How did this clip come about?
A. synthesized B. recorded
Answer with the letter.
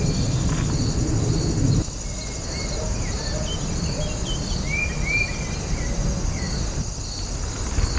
B